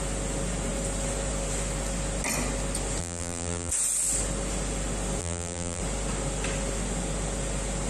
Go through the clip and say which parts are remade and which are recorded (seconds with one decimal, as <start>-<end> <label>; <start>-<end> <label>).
0.0-3.0 recorded; 3.0-3.7 remade; 3.7-5.2 recorded; 5.2-5.8 remade; 5.8-7.9 recorded